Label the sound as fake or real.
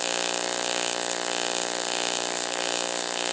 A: real